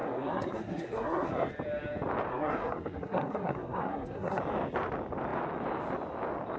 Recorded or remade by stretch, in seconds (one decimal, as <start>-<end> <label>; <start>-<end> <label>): 0.0-1.5 remade; 1.5-2.3 recorded; 2.3-4.4 remade; 4.4-6.6 recorded